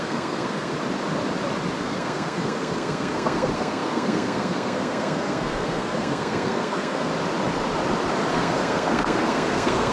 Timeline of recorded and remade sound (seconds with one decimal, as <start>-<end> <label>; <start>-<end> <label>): 0.0-0.7 remade; 0.7-1.8 recorded; 1.8-7.1 remade; 7.1-8.3 recorded; 8.3-9.9 remade